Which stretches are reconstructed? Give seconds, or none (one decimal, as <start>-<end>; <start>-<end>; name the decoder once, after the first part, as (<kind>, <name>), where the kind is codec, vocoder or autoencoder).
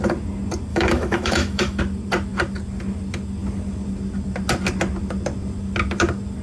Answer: 0.7-1.8 (autoencoder, DAC-VAE)